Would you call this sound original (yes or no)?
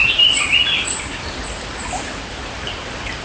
no